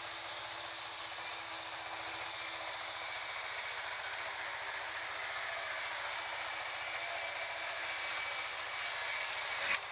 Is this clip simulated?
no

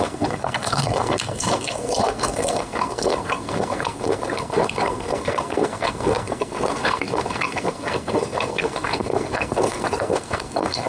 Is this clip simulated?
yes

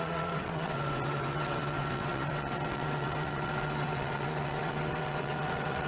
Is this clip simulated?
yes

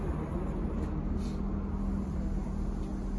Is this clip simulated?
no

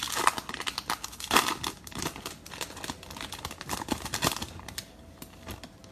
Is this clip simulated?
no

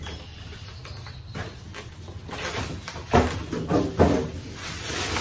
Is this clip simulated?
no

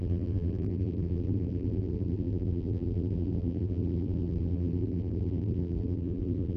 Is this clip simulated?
yes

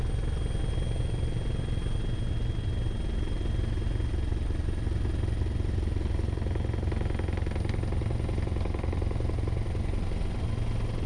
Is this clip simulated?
no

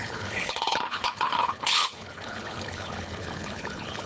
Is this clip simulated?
yes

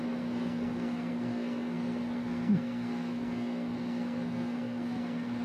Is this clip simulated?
yes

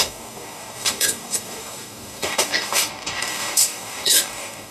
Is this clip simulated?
yes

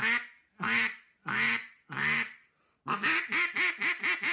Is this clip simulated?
no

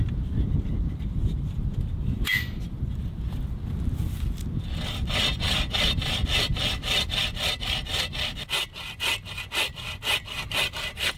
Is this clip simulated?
yes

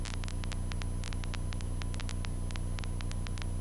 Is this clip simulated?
no